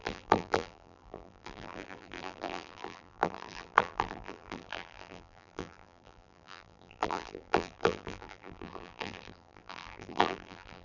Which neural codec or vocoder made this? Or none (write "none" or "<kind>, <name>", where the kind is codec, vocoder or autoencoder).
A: vocoder, BigVGAN v2